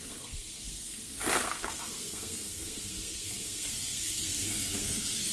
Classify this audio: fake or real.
fake